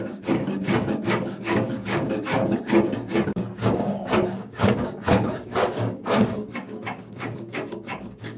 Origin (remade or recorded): remade